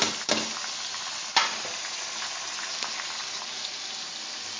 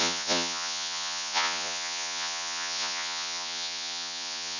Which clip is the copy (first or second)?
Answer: second